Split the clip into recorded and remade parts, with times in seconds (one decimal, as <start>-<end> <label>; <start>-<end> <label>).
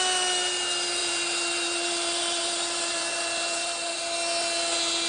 0.0-1.0 recorded; 1.0-4.0 remade; 4.0-5.1 recorded